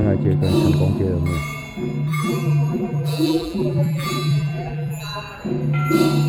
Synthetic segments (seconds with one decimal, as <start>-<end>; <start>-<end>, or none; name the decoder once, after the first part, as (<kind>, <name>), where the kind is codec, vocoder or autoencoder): 2.1-5.2 (vocoder, BigVGAN v2)